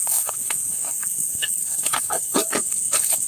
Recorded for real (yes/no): no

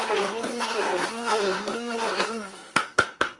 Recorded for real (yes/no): no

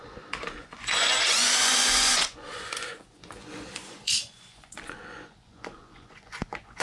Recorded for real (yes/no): no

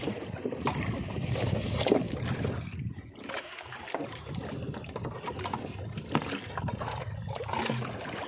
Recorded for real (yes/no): yes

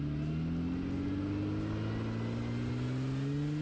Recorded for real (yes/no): yes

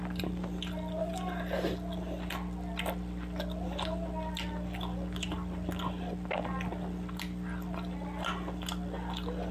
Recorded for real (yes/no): yes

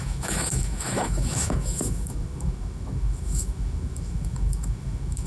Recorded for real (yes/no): no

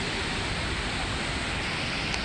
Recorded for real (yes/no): yes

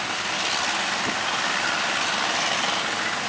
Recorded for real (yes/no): yes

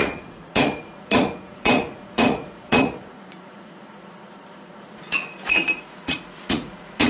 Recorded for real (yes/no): no